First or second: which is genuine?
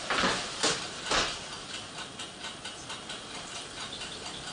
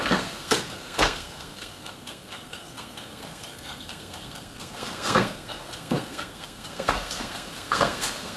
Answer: first